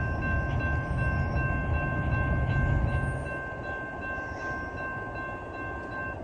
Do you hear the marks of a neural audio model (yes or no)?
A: no